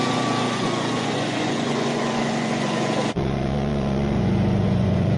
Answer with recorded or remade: remade